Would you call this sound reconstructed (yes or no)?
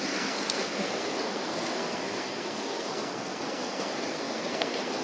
yes